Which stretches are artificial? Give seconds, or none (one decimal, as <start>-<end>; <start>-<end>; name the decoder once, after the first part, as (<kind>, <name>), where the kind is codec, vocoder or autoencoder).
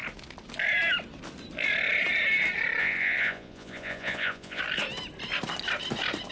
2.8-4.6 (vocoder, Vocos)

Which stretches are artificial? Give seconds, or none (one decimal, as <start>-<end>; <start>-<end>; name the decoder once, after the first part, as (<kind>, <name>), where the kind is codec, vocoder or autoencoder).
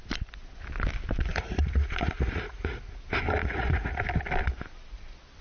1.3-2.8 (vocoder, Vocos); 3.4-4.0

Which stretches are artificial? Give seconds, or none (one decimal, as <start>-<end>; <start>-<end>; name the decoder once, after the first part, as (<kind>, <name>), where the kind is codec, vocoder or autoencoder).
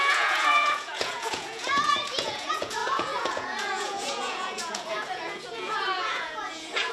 0.0-6.9 (vocoder, Vocos)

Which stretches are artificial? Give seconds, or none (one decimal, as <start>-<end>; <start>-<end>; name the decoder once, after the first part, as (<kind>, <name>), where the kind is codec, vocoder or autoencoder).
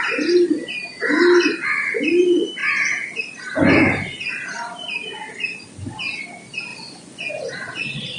6.7-7.3 (vocoder, Vocos)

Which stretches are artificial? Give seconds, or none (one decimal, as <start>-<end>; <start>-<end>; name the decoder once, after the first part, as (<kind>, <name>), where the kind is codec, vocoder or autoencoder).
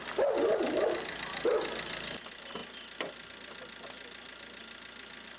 none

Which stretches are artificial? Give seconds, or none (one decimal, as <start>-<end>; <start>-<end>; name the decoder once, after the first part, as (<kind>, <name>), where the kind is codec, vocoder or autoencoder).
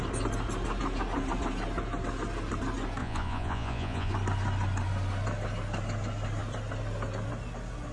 3.0-4.1 (vocoder, Vocos)